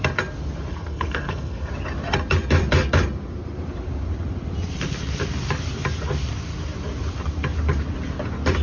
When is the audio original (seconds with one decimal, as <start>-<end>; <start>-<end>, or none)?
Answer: 0.0-0.7; 1.7-8.6